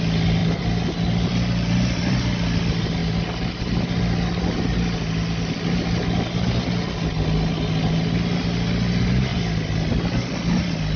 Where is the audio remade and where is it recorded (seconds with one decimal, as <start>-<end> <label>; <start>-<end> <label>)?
0.0-11.0 recorded

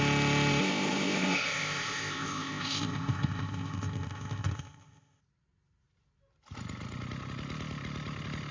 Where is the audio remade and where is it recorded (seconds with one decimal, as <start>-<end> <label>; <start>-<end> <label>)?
0.0-0.6 recorded; 0.6-5.2 remade; 5.2-8.5 recorded

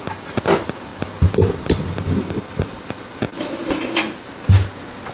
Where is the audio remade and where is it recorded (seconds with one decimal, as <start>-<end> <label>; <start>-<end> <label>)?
0.0-5.1 recorded

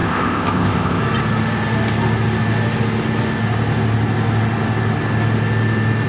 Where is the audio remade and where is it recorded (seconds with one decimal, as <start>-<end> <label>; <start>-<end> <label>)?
0.0-1.0 remade; 1.0-6.1 recorded

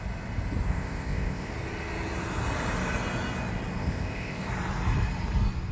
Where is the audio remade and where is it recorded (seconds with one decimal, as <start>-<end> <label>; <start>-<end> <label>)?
0.0-0.7 recorded; 0.7-1.5 remade; 1.5-3.8 recorded; 3.8-4.5 remade; 4.5-5.7 recorded